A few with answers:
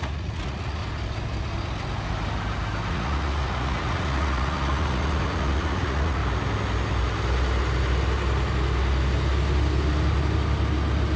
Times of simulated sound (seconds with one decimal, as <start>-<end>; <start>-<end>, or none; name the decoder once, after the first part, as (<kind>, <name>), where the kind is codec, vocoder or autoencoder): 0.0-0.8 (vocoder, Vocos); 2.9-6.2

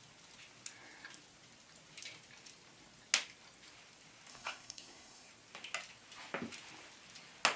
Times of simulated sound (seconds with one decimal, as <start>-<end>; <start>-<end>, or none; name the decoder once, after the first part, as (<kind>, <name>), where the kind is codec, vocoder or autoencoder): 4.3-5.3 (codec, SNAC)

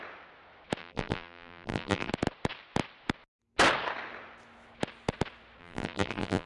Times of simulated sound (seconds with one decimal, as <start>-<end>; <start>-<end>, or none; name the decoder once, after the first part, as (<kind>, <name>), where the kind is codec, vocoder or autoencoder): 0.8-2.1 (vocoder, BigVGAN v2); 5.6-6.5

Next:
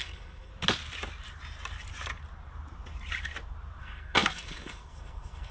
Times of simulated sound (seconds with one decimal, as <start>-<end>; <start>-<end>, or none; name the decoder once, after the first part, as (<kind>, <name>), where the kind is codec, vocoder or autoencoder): 0.0-0.5 (codec, SNAC); 3.8-5.5

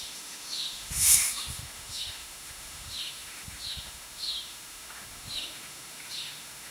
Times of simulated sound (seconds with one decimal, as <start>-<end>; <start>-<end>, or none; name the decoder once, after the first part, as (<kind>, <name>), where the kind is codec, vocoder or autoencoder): 0.0-6.7 (autoencoder, DAC-VAE)

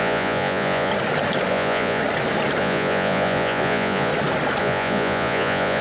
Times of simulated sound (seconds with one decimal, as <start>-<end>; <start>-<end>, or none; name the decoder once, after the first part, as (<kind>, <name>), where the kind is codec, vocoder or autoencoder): 0.0-0.9 (vocoder, Vocos); 1.5-2.0; 2.6-4.1; 4.6-5.8

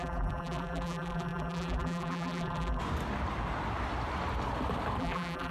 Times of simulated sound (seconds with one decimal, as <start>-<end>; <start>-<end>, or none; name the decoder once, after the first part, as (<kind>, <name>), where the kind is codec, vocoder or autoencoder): 0.0-2.8 (vocoder, BigVGAN v2); 5.0-5.5

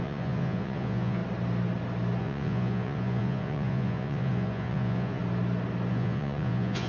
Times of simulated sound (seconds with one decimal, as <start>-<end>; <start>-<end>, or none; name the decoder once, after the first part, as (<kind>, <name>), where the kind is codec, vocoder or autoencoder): 0.0-1.2 (vocoder, Vocos); 2.2-5.2; 5.9-6.9